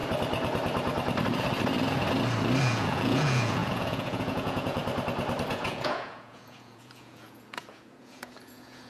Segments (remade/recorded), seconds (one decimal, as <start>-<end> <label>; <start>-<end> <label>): 0.0-2.6 recorded; 2.6-4.8 remade; 4.8-5.5 recorded; 5.5-8.9 remade